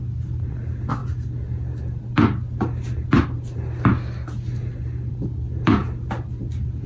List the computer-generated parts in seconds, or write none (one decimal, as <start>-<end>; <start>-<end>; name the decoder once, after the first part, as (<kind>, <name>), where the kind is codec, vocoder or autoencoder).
none